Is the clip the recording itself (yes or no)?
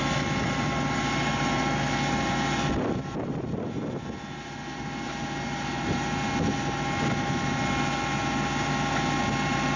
yes